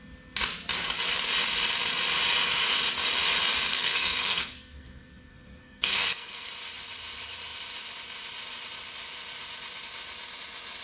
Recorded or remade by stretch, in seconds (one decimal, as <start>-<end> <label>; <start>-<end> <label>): 0.0-3.7 recorded; 3.7-6.5 remade; 6.5-10.8 recorded